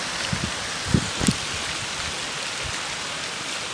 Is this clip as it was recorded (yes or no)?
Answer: yes